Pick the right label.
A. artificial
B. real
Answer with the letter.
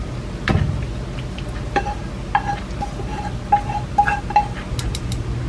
B